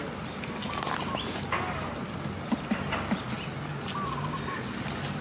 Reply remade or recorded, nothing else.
recorded